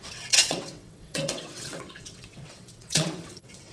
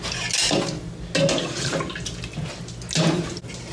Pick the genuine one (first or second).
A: second